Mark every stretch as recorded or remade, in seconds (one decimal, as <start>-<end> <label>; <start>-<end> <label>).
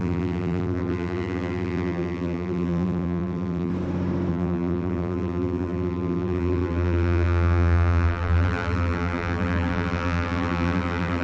0.0-3.7 remade; 3.7-4.3 recorded; 4.3-11.2 remade